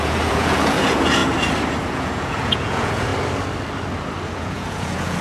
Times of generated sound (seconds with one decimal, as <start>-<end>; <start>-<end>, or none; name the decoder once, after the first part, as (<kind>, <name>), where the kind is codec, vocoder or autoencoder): 0.0-1.2 (vocoder, Vocos); 1.9-3.1; 4.4-5.2